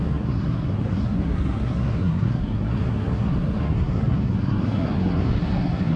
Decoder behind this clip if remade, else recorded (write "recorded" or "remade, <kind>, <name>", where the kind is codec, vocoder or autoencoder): remade, codec, SNAC